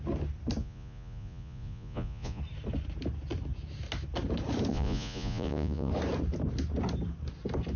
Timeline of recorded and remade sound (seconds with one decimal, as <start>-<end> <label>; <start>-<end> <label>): 0.0-0.6 recorded; 0.6-2.4 remade; 2.4-4.7 recorded; 4.7-5.9 remade; 5.9-7.8 recorded

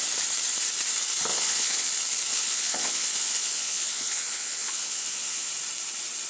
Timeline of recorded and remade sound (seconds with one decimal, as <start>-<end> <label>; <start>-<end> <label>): 0.0-1.3 recorded; 1.3-1.9 remade; 1.9-2.3 recorded; 2.3-5.5 remade; 5.5-6.3 recorded

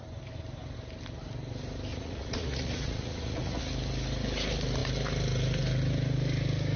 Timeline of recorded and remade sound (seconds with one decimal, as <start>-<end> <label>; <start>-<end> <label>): 0.0-1.9 recorded; 1.9-3.6 remade; 3.6-6.8 recorded

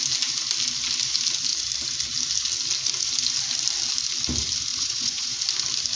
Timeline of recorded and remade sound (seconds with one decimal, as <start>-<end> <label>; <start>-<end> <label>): 0.0-4.7 recorded; 4.7-5.4 remade; 5.4-5.9 recorded

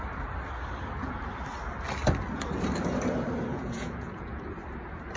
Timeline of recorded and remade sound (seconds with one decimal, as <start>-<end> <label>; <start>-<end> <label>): 0.0-3.5 recorded; 3.5-4.4 remade; 4.4-5.2 recorded